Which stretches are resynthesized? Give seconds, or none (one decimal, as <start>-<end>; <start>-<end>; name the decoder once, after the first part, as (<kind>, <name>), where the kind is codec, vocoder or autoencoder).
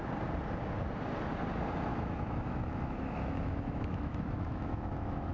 1.9-5.3 (autoencoder, DAC-VAE)